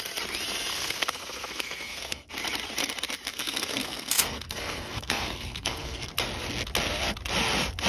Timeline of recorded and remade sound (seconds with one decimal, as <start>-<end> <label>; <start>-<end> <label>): 0.0-0.7 recorded; 0.7-2.3 remade; 2.3-3.3 recorded; 3.3-6.1 remade; 6.1-7.9 recorded